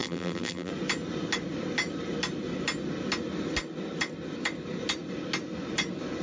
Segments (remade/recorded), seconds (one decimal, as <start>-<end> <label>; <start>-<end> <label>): 0.0-0.7 remade; 0.7-6.2 recorded